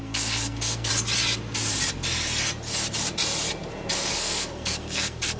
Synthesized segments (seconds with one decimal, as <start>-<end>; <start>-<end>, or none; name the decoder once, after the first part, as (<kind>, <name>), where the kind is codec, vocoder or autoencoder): 0.0-0.9 (codec, SNAC); 4.1-5.4